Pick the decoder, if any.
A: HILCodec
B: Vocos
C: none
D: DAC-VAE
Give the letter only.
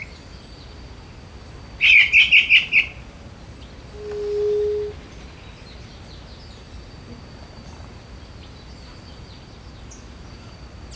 C